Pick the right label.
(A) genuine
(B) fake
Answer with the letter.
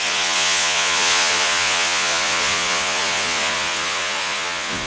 B